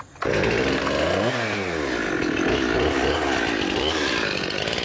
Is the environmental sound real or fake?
real